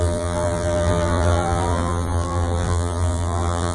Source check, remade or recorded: remade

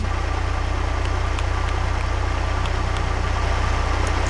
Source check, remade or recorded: recorded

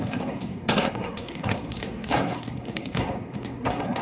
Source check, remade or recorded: remade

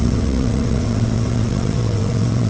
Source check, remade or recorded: remade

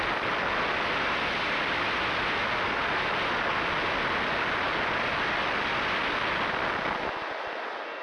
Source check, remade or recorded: recorded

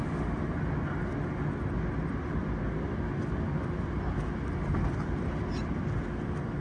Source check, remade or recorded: recorded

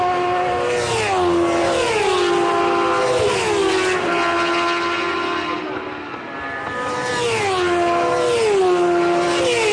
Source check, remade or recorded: recorded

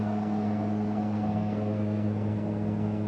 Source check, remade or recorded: remade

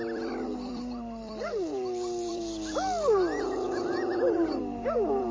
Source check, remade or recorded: remade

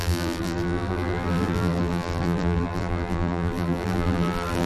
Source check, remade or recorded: remade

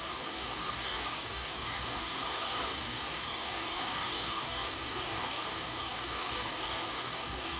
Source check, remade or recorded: remade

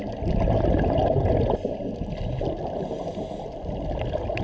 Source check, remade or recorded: recorded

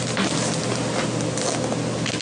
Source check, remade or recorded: recorded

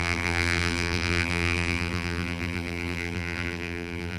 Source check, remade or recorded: remade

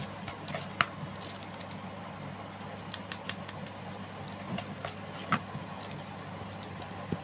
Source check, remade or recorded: recorded